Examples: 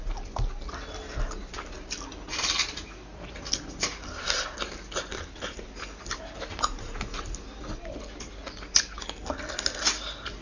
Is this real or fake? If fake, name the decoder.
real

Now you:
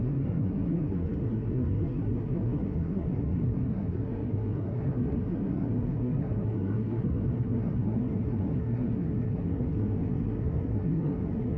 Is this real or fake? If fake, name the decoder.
fake, codec, SNAC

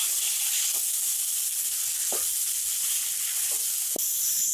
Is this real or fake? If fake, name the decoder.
real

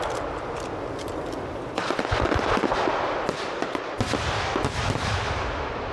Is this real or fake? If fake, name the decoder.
real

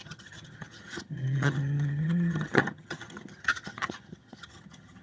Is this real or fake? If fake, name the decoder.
fake, vocoder, HiFi-GAN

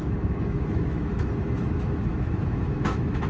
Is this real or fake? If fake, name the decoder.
fake, autoencoder, DAC-VAE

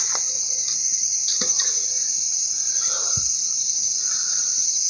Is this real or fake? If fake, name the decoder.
real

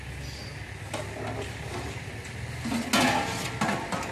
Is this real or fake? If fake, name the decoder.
real